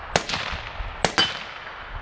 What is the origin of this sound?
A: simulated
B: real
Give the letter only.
B